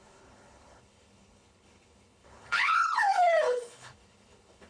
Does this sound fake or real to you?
fake